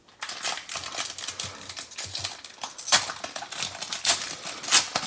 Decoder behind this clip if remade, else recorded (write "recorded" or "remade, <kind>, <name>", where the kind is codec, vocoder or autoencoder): recorded